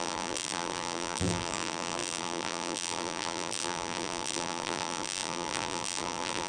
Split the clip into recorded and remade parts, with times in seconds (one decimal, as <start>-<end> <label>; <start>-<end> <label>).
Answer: 0.0-6.5 remade